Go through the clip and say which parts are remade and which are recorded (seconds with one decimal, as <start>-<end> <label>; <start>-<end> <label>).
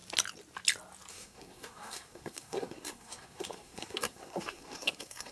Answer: 0.0-1.1 recorded; 1.1-5.3 remade